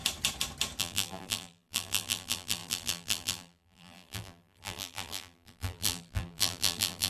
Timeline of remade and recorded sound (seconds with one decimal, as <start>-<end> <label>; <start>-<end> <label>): 0.0-0.8 recorded; 0.8-7.1 remade